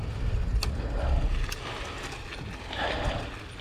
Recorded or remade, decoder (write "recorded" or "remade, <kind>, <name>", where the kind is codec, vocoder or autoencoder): recorded